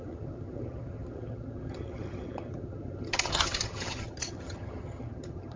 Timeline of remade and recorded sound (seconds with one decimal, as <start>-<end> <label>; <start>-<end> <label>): 0.0-5.6 remade